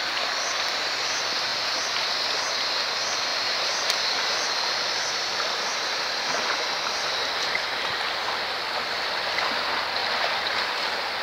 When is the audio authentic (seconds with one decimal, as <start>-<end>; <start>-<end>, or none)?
0.0-1.5; 2.1-3.3; 7.3-10.0; 10.5-11.2